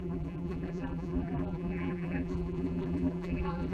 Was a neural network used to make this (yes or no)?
yes